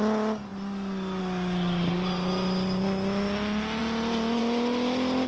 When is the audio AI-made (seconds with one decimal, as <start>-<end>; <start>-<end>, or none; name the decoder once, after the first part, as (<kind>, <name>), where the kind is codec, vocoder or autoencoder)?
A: none